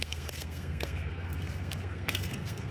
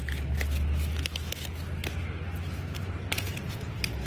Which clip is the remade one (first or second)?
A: first